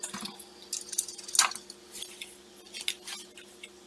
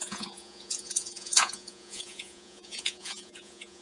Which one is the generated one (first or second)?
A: second